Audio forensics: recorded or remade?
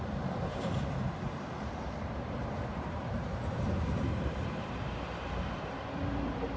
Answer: remade